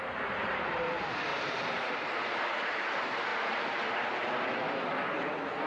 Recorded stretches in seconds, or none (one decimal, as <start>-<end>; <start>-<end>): 1.3-1.9; 3.3-5.7